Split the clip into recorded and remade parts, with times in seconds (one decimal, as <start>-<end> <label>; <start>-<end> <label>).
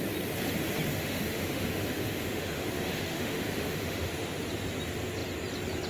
0.0-0.9 recorded; 0.9-4.4 remade; 4.4-5.9 recorded